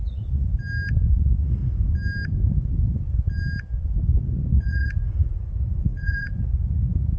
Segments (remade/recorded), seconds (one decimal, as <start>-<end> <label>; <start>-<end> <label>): 0.0-0.5 remade; 0.5-1.2 recorded; 1.2-1.6 remade; 1.6-4.5 recorded; 4.5-7.2 remade